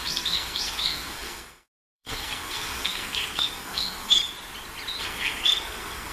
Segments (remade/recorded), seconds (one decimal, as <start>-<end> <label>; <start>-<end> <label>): 0.0-4.2 remade; 4.2-5.0 recorded; 5.0-6.1 remade